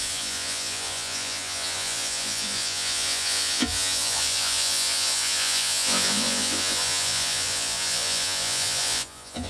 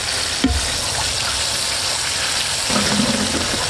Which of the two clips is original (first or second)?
second